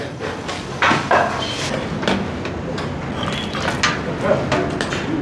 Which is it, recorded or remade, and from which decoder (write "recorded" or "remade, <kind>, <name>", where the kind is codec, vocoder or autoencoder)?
recorded